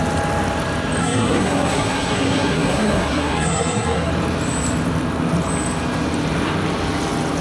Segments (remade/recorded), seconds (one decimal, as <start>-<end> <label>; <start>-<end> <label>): 0.0-1.0 recorded; 1.0-4.1 remade; 4.1-7.4 recorded